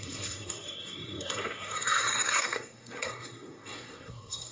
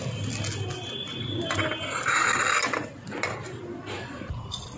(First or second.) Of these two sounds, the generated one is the first